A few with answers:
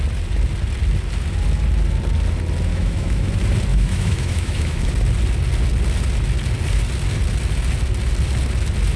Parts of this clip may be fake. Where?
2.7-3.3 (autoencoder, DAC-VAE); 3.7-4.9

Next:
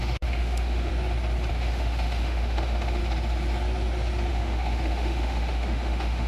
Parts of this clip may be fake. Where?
0.0-0.9 (autoencoder, DAC-VAE); 1.5-3.0; 4.3-6.3

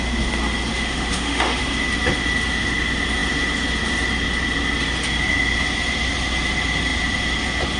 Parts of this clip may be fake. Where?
0.7-1.6 (autoencoder, DAC-VAE)

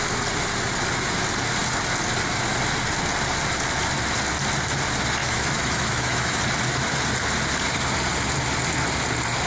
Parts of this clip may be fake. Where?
5.2-6.4 (autoencoder, DAC-VAE)

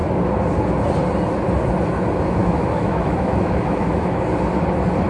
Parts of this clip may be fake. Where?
2.4-4.2 (autoencoder, DAC-VAE)